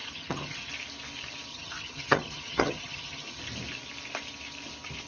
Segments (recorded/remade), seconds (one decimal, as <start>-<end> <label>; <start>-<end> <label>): 0.0-0.7 remade; 0.7-1.5 recorded; 1.5-3.4 remade; 3.4-5.1 recorded